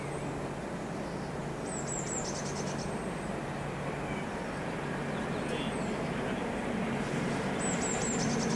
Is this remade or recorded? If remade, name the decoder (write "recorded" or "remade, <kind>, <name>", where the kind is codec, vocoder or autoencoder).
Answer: recorded